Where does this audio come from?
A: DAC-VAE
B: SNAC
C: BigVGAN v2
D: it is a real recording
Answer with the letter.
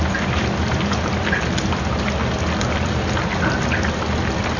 D